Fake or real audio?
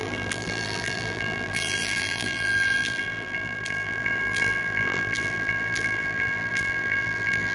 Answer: fake